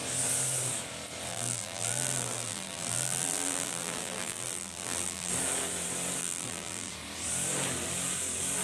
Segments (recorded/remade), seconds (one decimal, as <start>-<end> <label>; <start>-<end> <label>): 0.0-1.3 recorded; 1.3-5.3 remade; 5.3-6.2 recorded; 6.2-6.9 remade; 6.9-8.6 recorded